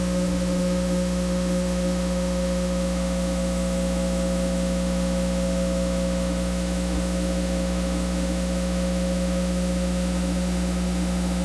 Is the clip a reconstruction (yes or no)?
yes